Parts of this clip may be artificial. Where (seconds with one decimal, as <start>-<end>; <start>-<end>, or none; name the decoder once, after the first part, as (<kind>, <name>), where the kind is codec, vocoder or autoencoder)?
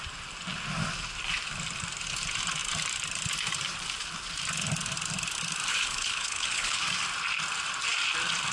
5.7-6.8 (codec, HILCodec)